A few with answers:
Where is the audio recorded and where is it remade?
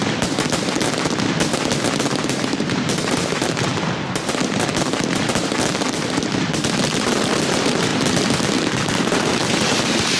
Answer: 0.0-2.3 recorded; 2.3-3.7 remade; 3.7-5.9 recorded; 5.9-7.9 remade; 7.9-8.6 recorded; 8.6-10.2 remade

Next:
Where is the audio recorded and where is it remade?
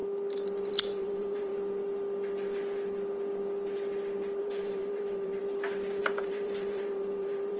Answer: 0.0-0.7 recorded; 0.7-1.5 remade; 1.5-4.4 recorded; 4.4-5.4 remade; 5.4-6.0 recorded; 6.0-7.6 remade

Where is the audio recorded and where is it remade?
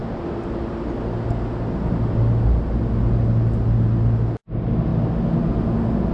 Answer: 0.0-6.1 recorded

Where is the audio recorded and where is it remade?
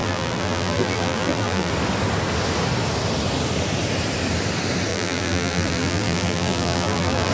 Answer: 0.0-1.7 remade; 1.7-4.9 recorded; 4.9-7.3 remade